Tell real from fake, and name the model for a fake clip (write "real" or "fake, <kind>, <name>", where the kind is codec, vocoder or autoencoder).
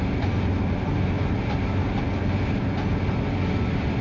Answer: real